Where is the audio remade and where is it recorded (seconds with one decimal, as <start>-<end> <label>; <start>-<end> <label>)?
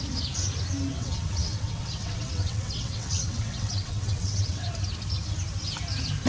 0.0-0.9 recorded; 0.9-4.7 remade; 4.7-6.3 recorded